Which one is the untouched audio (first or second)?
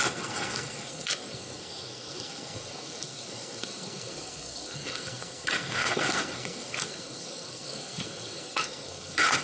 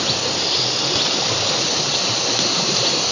second